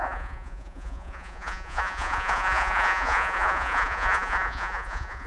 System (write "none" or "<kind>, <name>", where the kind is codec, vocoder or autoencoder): vocoder, Vocos